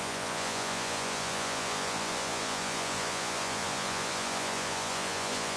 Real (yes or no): no